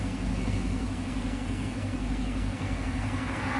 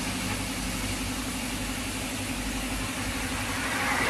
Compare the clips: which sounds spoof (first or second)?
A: first